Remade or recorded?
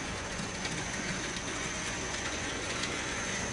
remade